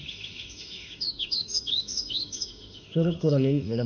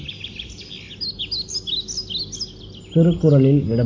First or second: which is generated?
first